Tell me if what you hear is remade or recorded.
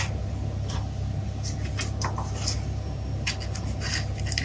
recorded